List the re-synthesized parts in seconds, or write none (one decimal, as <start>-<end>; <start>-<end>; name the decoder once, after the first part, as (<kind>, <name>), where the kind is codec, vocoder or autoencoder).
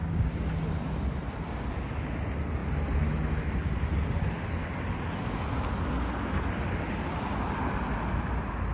none